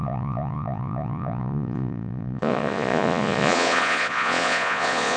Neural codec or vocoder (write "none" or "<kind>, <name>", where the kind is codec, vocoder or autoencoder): vocoder, Vocos